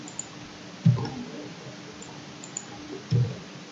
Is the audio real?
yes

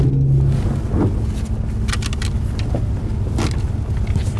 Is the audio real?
yes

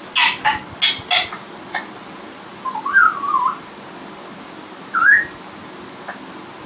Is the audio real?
yes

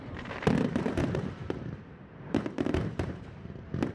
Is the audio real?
no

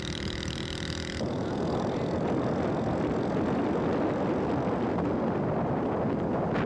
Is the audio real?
yes